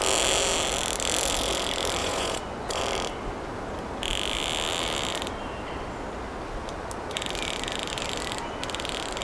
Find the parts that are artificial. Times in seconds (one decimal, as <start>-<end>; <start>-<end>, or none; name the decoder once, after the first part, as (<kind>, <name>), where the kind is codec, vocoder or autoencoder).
2.0-2.8 (vocoder, Vocos)